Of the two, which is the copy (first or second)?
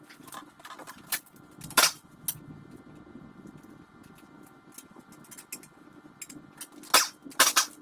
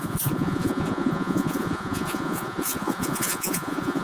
second